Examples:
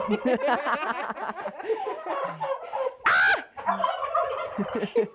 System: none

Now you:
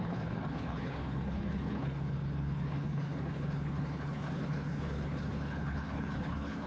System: codec, HILCodec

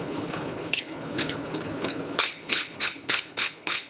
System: codec, HILCodec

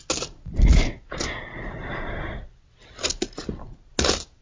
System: none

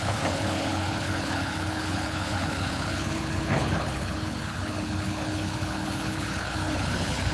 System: codec, HILCodec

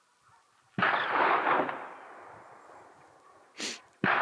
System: none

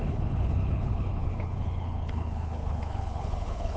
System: codec, HILCodec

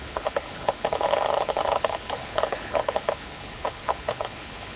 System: codec, HILCodec